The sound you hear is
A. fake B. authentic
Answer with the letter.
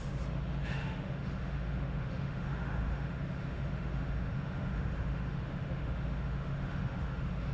A